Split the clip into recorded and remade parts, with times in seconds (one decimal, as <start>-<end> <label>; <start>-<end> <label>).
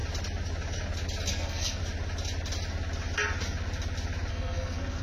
0.0-1.3 recorded; 1.3-1.8 remade; 1.8-4.3 recorded; 4.3-5.0 remade